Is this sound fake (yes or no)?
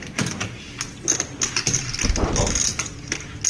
no